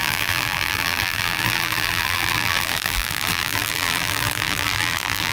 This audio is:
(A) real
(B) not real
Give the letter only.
B